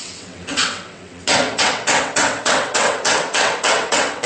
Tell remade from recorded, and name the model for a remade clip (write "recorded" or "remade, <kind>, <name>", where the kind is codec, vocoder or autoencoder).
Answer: remade, vocoder, WaveNeXt